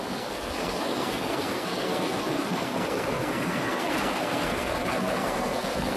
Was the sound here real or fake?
fake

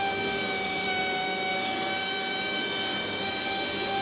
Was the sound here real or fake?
fake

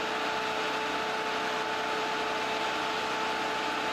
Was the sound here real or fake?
real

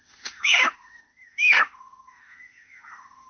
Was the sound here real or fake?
fake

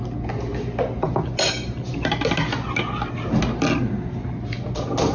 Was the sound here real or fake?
real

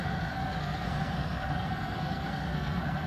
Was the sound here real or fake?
fake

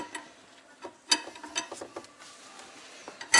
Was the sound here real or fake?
real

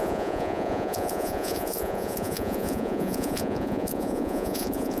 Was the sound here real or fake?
fake